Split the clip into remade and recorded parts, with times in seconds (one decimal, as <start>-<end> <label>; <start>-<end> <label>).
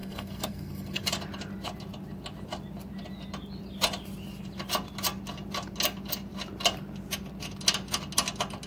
0.0-1.1 remade; 1.1-8.7 recorded